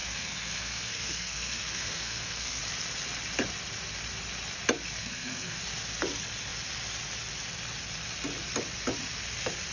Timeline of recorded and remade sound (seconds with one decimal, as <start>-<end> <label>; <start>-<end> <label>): 0.0-2.6 remade; 2.6-5.0 recorded; 5.0-5.6 remade; 5.6-9.7 recorded